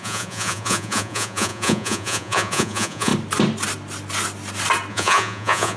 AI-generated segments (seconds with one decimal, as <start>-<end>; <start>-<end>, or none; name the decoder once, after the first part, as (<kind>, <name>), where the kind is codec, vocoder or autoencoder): 0.0-3.1 (vocoder, Vocos); 4.9-5.8